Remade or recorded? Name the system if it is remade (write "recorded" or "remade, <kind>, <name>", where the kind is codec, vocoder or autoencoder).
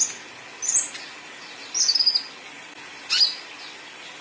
recorded